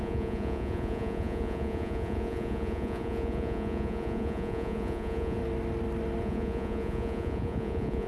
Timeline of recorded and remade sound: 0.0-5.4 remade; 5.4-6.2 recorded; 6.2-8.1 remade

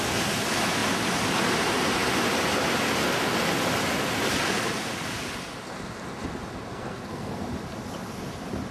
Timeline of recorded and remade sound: 0.0-6.7 recorded; 6.7-7.4 remade; 7.4-8.7 recorded

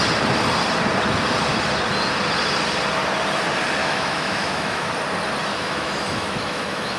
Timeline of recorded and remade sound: 0.0-3.8 recorded; 3.8-4.9 remade; 4.9-5.5 recorded; 5.5-7.0 remade

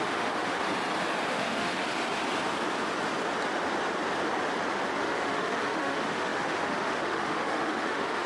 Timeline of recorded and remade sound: 0.0-0.6 remade; 0.6-1.3 recorded; 1.3-1.8 remade; 1.8-5.0 recorded; 5.0-8.3 remade

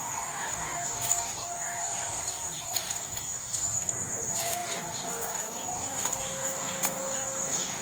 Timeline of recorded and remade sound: 0.0-7.8 remade

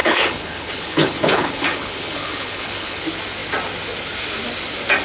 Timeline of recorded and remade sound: 0.0-3.0 remade; 3.0-5.0 recorded